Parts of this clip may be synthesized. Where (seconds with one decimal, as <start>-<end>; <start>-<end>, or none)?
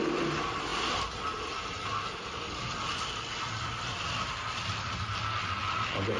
none